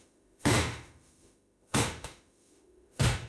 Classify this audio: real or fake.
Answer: fake